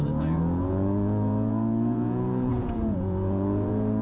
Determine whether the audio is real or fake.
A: fake